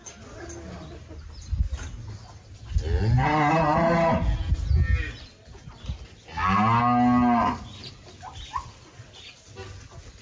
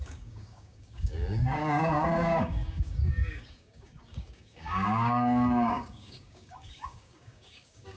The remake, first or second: second